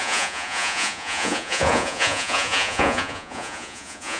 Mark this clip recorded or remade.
remade